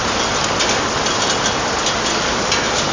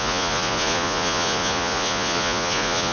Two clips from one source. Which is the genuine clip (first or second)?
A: first